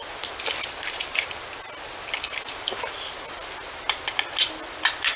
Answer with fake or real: real